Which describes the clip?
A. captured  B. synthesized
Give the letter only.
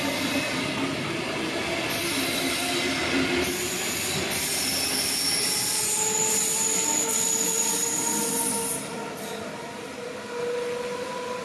A